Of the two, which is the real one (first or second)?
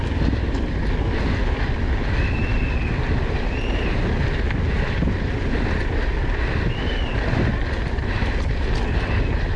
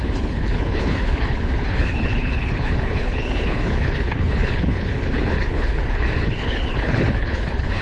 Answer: first